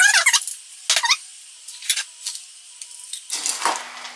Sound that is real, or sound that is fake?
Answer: real